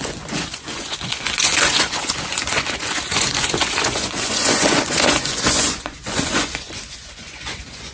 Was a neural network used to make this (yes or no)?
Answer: yes